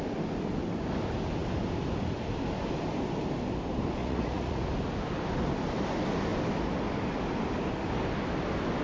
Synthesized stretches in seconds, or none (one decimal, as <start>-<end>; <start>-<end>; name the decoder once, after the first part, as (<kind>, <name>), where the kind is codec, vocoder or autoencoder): 4.0-4.6 (vocoder, Vocos)